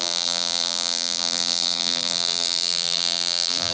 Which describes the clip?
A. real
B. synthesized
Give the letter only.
B